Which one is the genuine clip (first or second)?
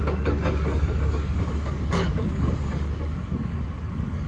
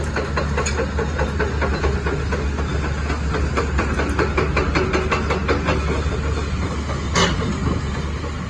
second